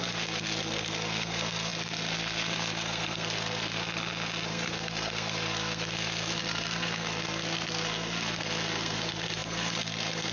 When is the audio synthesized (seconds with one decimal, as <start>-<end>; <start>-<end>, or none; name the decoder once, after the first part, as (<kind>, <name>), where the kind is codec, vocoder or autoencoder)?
0.0-3.8 (codec, SNAC); 4.5-10.3